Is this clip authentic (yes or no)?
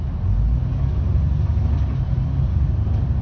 yes